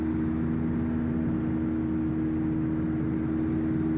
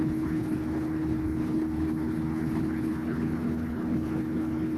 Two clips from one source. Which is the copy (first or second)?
second